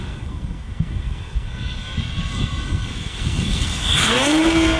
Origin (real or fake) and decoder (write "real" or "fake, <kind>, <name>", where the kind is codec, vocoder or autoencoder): fake, codec, SNAC